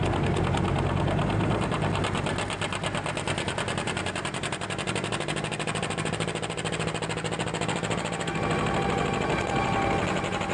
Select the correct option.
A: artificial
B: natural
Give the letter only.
B